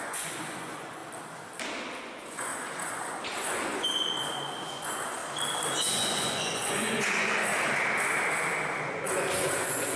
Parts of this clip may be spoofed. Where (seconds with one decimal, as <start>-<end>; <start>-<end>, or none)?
0.0-1.0; 2.0-5.2; 5.7-7.5; 8.8-10.0